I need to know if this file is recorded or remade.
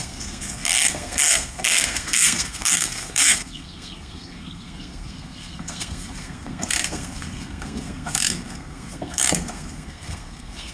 remade